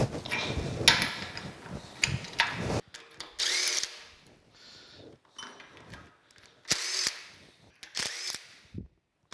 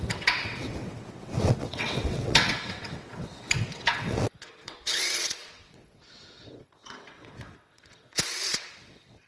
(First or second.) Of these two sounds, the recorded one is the first